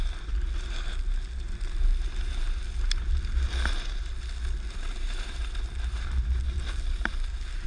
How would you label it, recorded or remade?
recorded